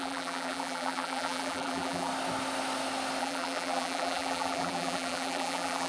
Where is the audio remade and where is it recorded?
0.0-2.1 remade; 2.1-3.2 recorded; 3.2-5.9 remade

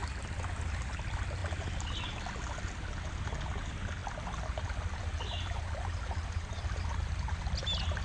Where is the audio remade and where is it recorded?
0.0-8.0 recorded

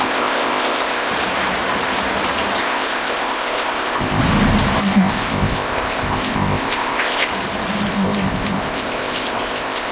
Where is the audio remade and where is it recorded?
0.0-1.1 remade; 1.1-2.6 recorded; 2.6-4.2 remade; 4.2-4.8 recorded; 4.8-7.3 remade; 7.3-7.9 recorded; 7.9-9.9 remade

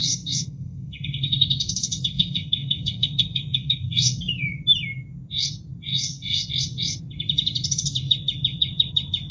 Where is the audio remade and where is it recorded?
0.0-4.3 remade; 4.3-5.9 recorded; 5.9-6.5 remade; 6.5-9.3 recorded

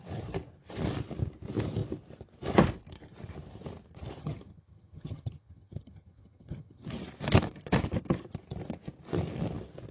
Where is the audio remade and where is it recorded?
0.0-4.2 recorded; 4.2-6.9 remade; 6.9-9.9 recorded

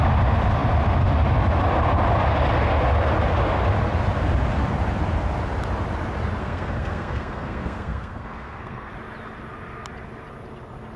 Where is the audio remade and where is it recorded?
0.0-6.4 recorded; 6.4-8.9 remade; 8.9-11.0 recorded

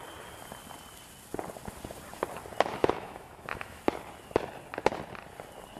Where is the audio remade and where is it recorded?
0.0-2.8 recorded; 2.8-3.8 remade; 3.8-5.8 recorded

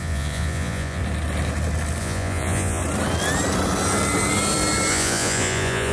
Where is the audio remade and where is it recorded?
0.0-1.0 remade; 1.0-2.0 recorded; 2.0-2.8 remade; 2.8-4.9 recorded; 4.9-5.9 remade